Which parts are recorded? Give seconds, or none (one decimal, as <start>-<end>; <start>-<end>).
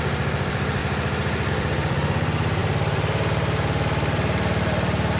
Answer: 0.8-1.5